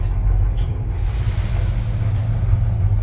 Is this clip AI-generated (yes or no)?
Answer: no